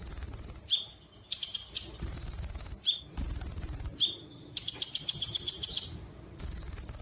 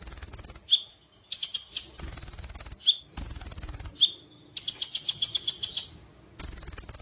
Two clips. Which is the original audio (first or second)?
second